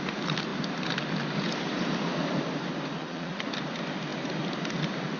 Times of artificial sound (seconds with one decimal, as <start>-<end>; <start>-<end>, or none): 3.0-3.5